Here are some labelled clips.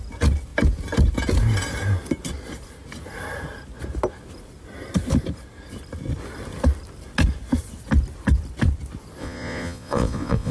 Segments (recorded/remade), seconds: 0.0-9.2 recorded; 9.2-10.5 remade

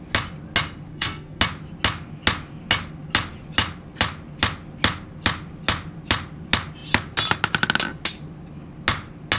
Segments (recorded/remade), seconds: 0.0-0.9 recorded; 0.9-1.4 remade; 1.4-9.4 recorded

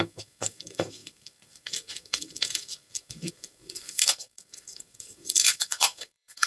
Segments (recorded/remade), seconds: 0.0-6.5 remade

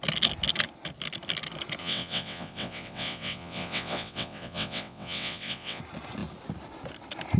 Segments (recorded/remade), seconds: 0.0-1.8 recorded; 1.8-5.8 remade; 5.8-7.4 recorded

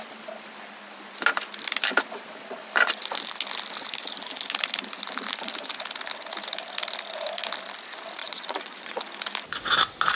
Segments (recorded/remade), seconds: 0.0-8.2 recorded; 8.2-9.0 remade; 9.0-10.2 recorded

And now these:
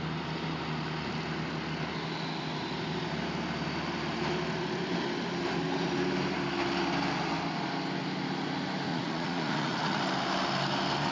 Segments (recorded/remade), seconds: 0.0-8.9 recorded; 8.9-10.0 remade; 10.0-11.1 recorded

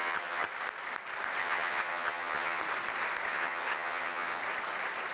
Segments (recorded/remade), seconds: 0.0-0.5 remade; 0.5-1.4 recorded; 1.4-2.6 remade; 2.6-3.3 recorded; 3.3-4.4 remade; 4.4-5.1 recorded

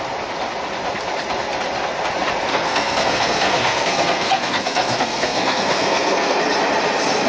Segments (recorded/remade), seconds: 0.0-2.5 recorded; 2.5-6.4 remade; 6.4-7.3 recorded